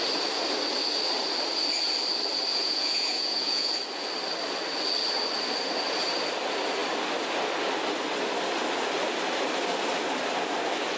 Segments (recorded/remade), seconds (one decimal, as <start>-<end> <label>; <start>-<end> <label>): 0.0-2.5 recorded; 2.5-3.7 remade; 3.7-11.0 recorded